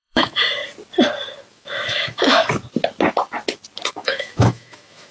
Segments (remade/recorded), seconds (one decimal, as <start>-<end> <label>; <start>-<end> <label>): 0.0-0.6 remade; 0.6-1.5 recorded; 1.5-2.4 remade; 2.4-3.9 recorded; 3.9-5.1 remade